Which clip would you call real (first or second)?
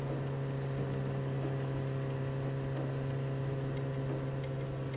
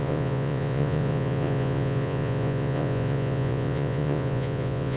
first